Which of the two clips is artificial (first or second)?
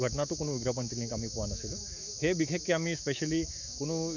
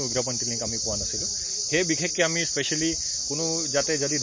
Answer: first